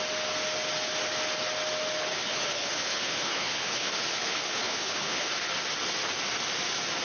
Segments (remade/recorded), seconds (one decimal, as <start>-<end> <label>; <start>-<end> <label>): 0.0-2.1 recorded; 2.1-5.3 remade; 5.3-7.0 recorded